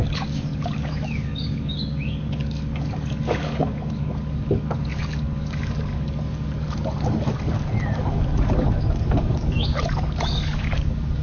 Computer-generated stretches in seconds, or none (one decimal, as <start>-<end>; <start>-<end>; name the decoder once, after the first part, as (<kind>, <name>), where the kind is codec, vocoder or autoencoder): 0.0-11.2 (codec, DAC)